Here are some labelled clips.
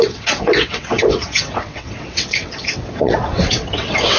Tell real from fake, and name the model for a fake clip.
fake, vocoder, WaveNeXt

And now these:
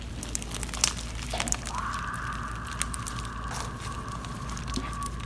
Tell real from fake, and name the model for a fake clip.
real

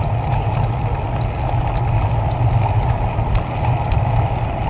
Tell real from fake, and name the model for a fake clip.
real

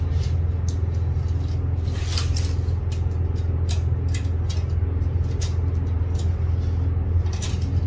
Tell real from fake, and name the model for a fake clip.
real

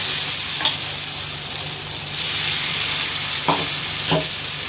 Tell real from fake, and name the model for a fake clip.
real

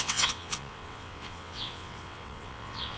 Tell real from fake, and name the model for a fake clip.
fake, vocoder, WaveNeXt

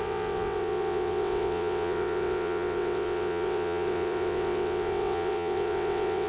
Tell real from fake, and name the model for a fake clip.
fake, vocoder, WaveNeXt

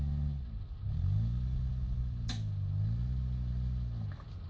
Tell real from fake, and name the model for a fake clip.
real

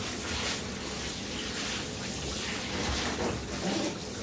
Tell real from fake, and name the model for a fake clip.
real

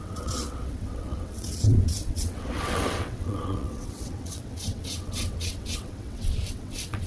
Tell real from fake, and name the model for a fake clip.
fake, vocoder, WaveNeXt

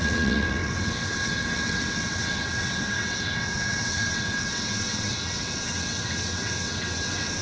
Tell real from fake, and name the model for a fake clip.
fake, vocoder, WaveNeXt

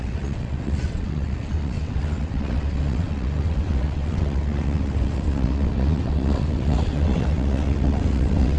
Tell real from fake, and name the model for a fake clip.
fake, vocoder, WaveNeXt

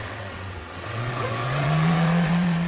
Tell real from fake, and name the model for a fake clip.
fake, vocoder, WaveNeXt